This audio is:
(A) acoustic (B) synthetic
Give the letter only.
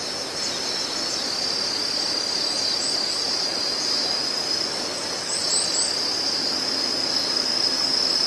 B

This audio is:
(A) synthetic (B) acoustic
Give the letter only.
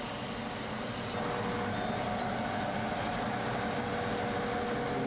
B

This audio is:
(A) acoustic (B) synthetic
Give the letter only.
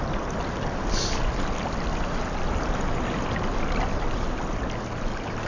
A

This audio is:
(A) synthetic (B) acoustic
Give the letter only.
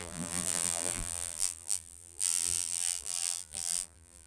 A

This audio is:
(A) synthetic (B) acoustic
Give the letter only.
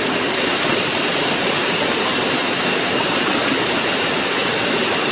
B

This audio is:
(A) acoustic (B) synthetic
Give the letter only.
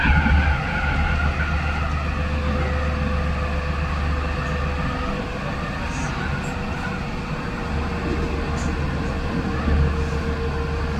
A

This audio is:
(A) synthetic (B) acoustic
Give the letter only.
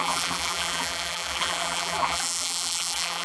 A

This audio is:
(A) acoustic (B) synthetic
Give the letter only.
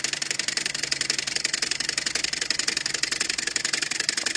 A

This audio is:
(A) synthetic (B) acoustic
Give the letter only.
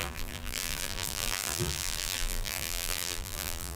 A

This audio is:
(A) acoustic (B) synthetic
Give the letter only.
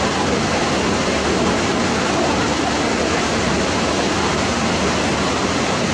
A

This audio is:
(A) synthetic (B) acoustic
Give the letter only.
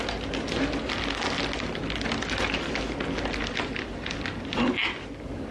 B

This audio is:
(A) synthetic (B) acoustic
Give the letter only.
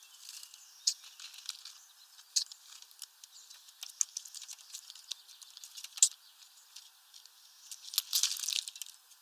B